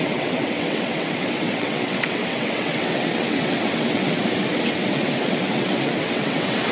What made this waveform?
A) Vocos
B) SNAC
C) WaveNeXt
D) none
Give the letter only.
C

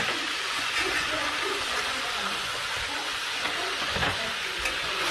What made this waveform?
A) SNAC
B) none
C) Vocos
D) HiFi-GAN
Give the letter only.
C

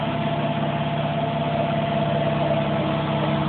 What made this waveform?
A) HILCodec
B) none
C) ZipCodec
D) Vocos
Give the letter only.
B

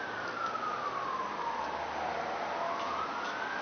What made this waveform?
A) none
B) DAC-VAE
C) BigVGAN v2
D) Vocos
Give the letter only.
A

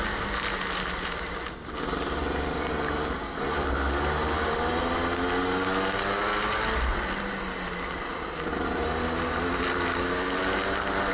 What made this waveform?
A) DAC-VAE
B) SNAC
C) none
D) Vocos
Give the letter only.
C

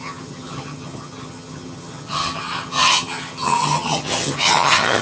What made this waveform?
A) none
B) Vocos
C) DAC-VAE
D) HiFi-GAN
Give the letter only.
D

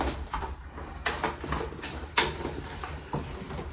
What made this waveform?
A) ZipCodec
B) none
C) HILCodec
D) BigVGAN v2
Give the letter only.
D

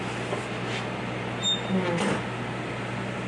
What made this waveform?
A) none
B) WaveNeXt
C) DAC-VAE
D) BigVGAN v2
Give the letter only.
A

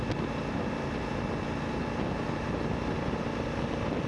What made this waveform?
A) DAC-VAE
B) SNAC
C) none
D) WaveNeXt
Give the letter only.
C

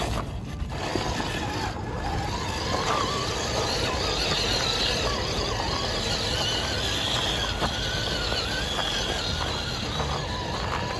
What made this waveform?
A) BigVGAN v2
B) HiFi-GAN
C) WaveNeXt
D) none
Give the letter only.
D